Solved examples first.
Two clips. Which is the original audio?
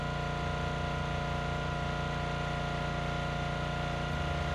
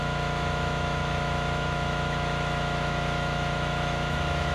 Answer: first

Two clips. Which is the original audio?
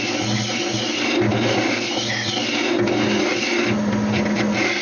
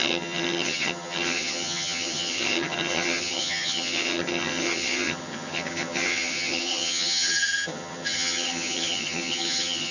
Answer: first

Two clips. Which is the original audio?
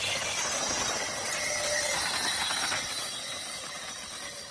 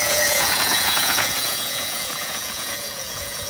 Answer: first